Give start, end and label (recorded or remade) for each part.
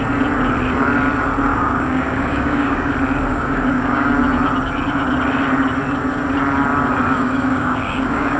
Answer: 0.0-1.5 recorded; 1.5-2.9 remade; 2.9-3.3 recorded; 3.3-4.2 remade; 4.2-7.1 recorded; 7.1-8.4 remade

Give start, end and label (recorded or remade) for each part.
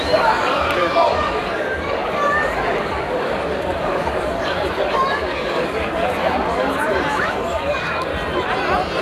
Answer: 0.0-8.1 remade; 8.1-9.0 recorded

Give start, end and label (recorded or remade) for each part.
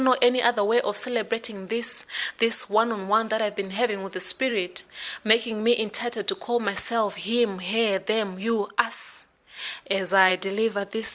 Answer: 0.0-10.3 recorded; 10.3-11.1 remade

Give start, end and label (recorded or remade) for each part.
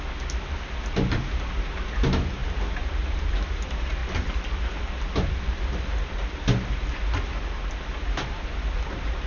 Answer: 0.0-9.3 recorded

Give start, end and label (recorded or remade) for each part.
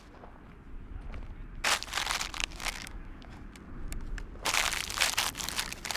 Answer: 0.0-2.4 recorded; 2.4-3.5 remade; 3.5-6.0 recorded